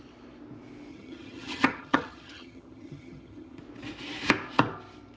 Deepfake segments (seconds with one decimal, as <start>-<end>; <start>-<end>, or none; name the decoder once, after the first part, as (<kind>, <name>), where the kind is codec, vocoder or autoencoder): 0.9-3.6 (vocoder, HiFi-GAN)